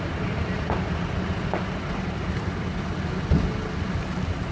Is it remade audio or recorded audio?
recorded